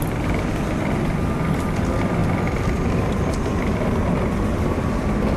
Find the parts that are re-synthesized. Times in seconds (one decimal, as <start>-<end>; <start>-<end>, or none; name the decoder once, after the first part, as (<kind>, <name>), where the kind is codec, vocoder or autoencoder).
none